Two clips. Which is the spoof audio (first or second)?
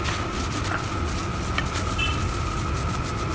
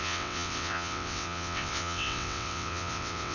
second